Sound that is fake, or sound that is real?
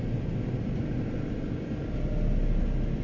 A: real